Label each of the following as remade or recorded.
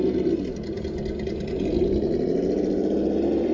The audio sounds recorded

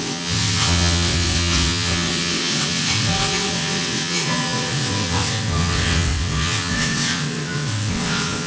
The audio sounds remade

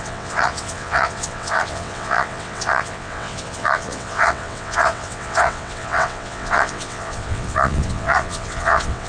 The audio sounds remade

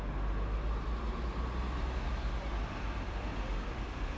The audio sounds recorded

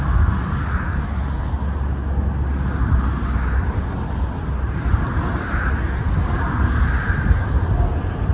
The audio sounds recorded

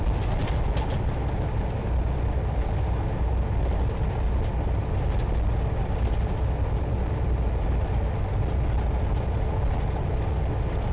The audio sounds recorded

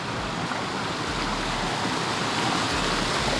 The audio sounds recorded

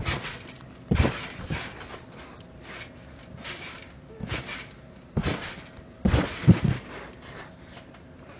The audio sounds recorded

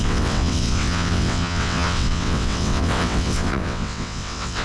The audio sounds remade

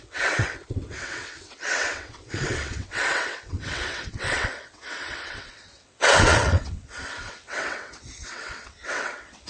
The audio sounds remade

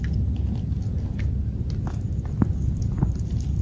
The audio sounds recorded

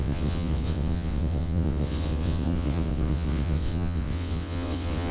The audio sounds remade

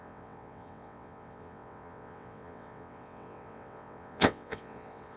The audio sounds remade